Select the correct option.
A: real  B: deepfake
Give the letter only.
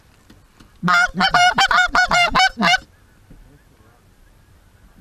B